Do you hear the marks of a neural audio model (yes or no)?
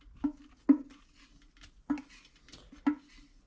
no